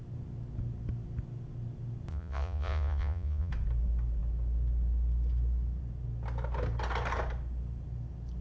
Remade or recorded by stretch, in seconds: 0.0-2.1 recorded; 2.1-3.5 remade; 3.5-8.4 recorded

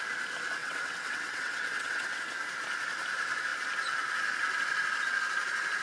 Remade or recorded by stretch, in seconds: 0.0-0.6 recorded; 0.6-2.2 remade; 2.2-5.8 recorded

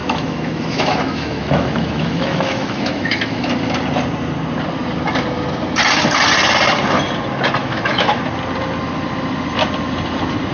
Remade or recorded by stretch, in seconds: 0.0-3.5 remade; 3.5-7.6 recorded; 7.6-8.2 remade; 8.2-10.5 recorded

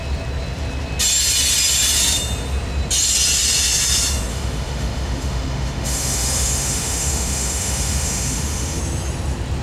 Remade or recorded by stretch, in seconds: 0.0-4.3 recorded; 4.3-8.8 remade; 8.8-9.6 recorded

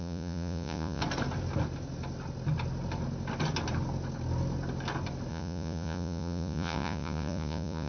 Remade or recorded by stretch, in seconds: 0.0-1.0 remade; 1.0-5.3 recorded; 5.3-7.9 remade

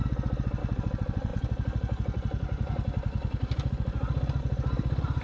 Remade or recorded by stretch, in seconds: 0.0-5.2 recorded